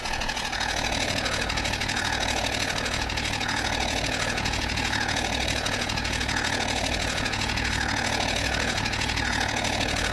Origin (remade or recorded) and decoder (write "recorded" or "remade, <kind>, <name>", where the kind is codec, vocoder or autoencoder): remade, vocoder, Vocos